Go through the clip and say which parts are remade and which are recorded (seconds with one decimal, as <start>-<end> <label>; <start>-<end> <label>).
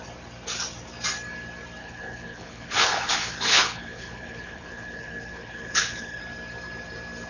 0.0-1.8 recorded; 1.8-6.2 remade; 6.2-7.3 recorded